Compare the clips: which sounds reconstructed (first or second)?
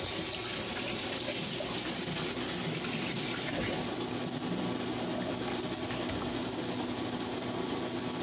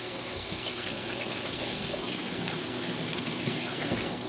second